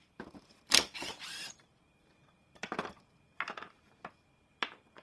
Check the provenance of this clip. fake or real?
fake